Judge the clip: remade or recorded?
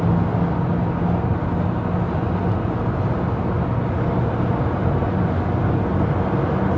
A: recorded